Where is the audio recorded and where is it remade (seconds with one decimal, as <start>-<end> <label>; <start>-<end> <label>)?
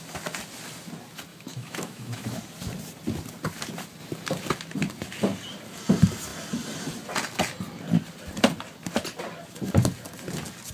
0.0-1.3 recorded; 1.3-2.4 remade; 2.4-10.7 recorded